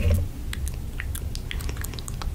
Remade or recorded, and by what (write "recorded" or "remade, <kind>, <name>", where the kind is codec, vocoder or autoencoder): recorded